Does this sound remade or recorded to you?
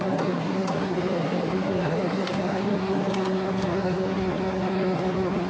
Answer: remade